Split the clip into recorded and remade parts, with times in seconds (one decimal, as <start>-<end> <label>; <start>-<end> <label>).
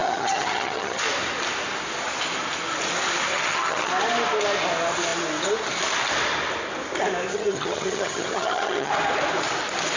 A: 0.0-1.0 remade; 1.0-3.3 recorded; 3.3-3.9 remade; 3.9-7.3 recorded; 7.3-8.9 remade; 8.9-10.0 recorded